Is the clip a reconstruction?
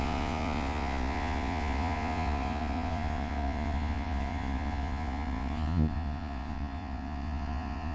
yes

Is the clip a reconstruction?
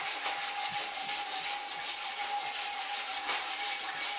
no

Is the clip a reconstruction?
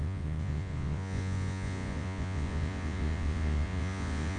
yes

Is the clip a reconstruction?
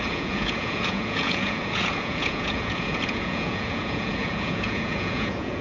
yes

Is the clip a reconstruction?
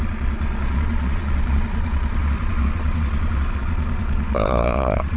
yes